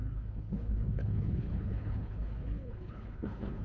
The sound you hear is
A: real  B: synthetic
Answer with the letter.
B